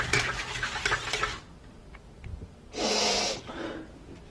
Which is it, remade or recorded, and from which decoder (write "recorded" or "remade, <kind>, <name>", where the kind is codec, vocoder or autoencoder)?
recorded